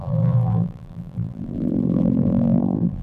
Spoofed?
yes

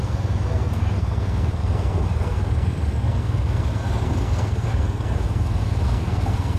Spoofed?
yes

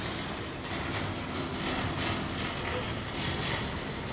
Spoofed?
no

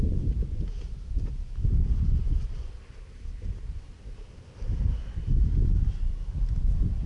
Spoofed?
no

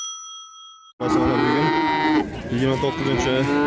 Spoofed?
no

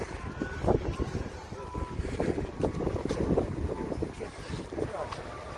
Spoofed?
no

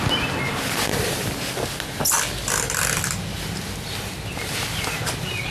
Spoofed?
no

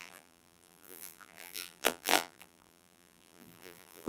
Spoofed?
yes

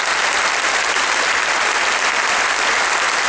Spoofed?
no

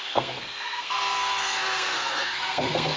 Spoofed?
yes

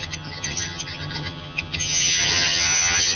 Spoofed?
yes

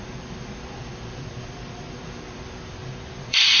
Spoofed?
yes